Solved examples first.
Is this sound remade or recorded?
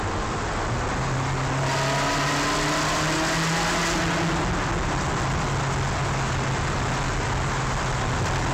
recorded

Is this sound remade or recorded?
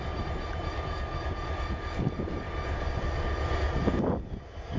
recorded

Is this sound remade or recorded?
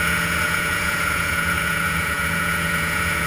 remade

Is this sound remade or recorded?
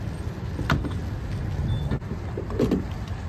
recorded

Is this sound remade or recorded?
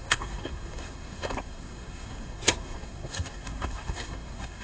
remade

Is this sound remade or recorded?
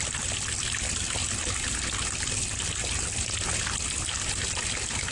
recorded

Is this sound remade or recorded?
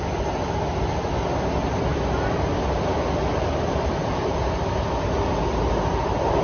recorded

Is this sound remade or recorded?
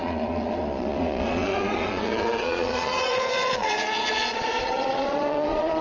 remade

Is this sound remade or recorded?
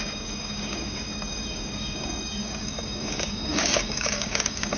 remade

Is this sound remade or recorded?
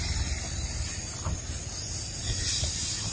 recorded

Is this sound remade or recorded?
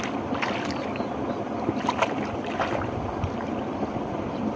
recorded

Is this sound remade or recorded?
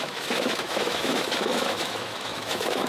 remade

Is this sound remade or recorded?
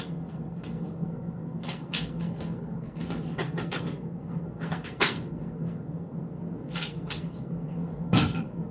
remade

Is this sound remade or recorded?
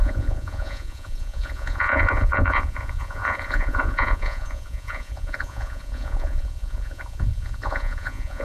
remade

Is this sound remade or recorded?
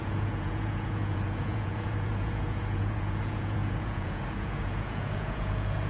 remade